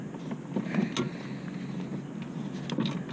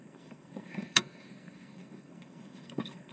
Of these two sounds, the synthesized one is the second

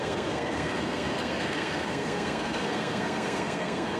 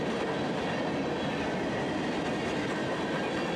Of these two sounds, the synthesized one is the first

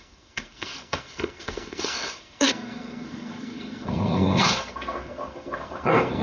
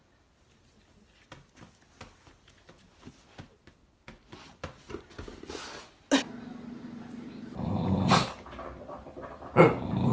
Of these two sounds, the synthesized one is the first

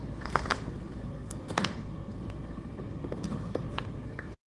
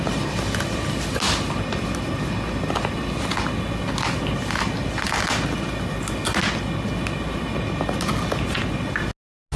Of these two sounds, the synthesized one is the first